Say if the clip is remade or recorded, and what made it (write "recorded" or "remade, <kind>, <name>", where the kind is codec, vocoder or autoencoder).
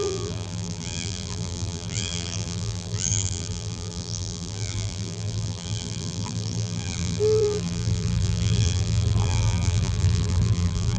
remade, vocoder, BigVGAN v2